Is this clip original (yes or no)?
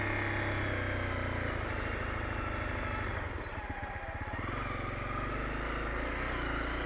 yes